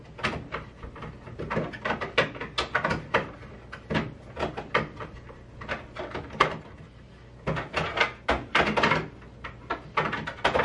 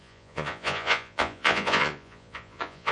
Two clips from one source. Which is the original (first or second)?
first